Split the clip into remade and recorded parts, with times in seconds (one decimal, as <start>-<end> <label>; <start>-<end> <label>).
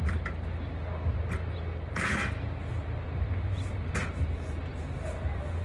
0.0-2.7 recorded; 2.7-4.8 remade; 4.8-5.6 recorded